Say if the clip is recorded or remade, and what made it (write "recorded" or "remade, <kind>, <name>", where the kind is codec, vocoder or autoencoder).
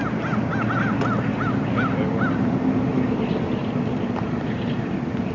recorded